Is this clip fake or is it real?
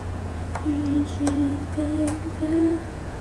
fake